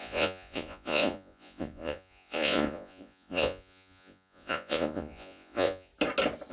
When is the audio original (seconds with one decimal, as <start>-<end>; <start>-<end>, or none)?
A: 5.9-6.5